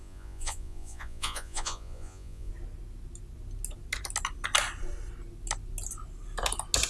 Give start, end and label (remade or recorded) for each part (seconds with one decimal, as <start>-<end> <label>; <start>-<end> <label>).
0.0-2.5 remade; 2.5-6.9 recorded